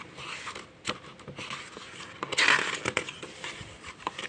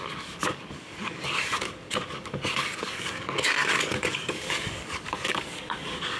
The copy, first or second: second